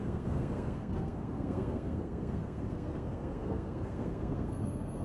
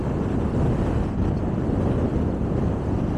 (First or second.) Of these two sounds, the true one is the second